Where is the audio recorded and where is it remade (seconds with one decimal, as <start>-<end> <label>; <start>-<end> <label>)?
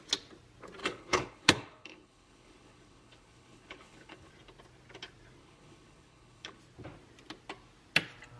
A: 0.0-0.8 recorded; 0.8-4.3 remade; 4.3-5.4 recorded; 5.4-6.6 remade; 6.6-8.4 recorded